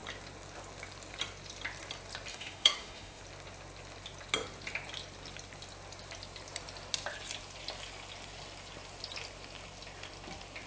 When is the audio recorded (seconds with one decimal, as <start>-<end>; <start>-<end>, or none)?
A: 0.0-2.3; 3.2-10.7

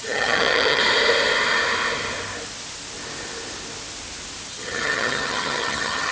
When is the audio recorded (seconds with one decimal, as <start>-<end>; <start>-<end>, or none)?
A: 0.8-4.5

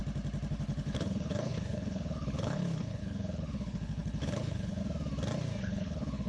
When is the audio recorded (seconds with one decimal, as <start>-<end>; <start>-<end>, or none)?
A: 0.0-0.5; 4.8-5.6

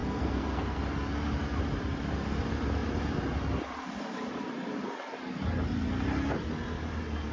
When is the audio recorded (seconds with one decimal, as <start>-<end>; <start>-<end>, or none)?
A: 0.8-7.3

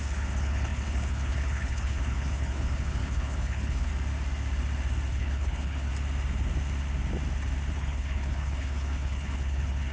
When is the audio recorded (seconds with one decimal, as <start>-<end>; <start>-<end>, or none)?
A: 3.9-5.1; 5.9-7.7

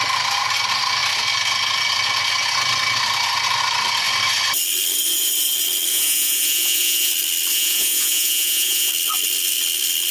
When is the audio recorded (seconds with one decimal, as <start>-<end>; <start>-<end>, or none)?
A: 0.0-5.9; 7.1-7.5; 8.9-10.1